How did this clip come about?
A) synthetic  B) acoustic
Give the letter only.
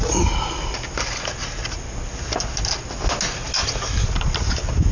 B